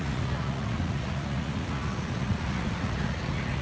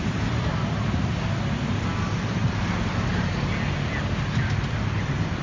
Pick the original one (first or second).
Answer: second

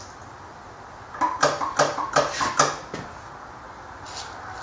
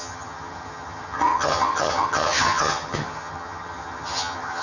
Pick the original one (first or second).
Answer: first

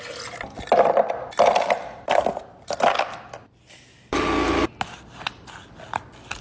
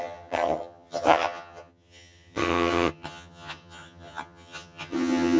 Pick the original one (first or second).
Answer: first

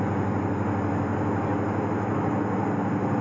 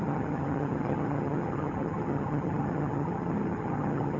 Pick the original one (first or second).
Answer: first